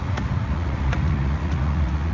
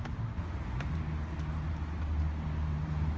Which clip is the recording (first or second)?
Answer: second